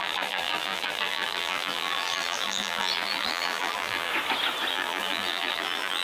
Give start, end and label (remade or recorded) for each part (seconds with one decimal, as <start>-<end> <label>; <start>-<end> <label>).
0.0-4.1 remade; 4.1-4.7 recorded; 4.7-6.0 remade